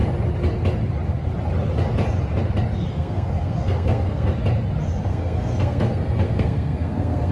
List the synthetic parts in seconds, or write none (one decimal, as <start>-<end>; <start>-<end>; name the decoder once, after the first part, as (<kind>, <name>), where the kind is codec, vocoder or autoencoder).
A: 2.9-4.3 (codec, SNAC); 5.1-7.3